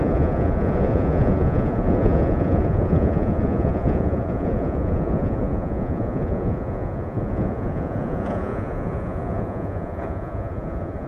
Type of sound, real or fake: fake